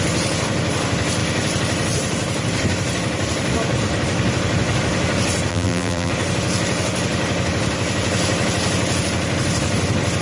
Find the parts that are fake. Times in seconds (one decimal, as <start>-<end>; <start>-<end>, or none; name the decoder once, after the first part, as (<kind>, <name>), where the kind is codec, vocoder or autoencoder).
5.5-6.1 (vocoder, BigVGAN v2)

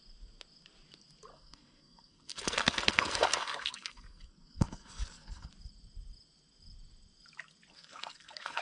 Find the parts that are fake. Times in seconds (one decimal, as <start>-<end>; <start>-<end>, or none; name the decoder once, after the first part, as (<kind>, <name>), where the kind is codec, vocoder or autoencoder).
1.3-5.5 (codec, SNAC); 7.7-8.6

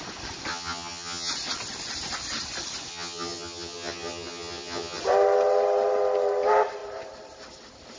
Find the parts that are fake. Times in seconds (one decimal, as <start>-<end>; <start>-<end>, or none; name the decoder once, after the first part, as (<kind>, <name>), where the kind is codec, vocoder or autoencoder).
0.5-1.3 (vocoder, HiFi-GAN); 2.9-5.0

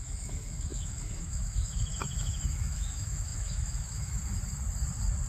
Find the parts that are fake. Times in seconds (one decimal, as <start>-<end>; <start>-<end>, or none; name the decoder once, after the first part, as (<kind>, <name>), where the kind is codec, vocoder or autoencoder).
0.0-4.4 (autoencoder, DAC-VAE)

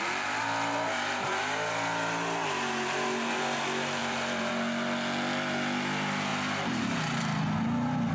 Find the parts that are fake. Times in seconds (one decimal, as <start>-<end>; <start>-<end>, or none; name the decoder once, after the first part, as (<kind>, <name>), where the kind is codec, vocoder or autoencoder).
4.0-4.5 (vocoder, BigVGAN v2)